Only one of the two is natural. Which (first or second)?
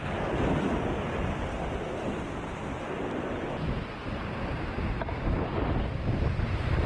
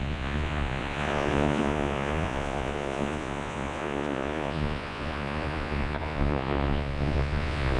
first